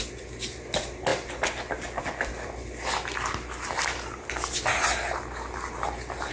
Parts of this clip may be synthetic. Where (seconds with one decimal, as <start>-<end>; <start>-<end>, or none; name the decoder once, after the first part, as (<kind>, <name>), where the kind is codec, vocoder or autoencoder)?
none